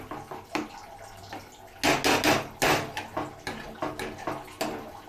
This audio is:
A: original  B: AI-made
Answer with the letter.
A